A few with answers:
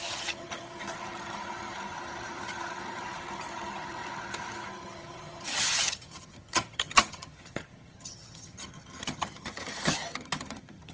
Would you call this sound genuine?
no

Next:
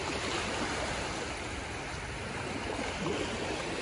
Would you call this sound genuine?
yes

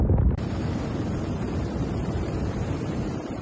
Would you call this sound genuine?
no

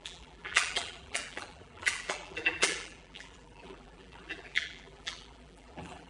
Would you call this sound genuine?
no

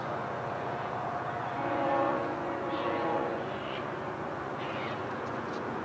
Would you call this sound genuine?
no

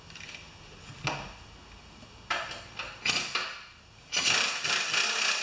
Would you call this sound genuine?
yes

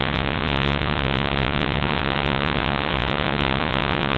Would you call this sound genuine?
no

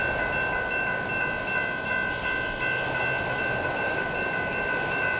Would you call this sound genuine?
yes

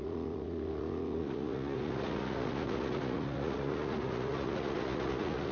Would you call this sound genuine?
no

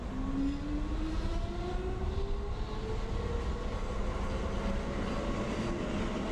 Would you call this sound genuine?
yes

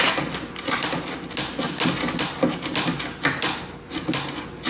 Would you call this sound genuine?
yes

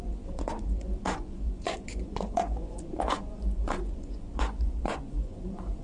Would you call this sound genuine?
no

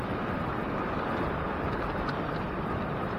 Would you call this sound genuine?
yes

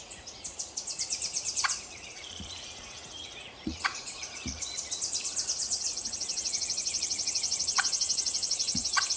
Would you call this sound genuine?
no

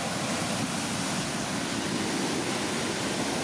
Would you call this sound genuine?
yes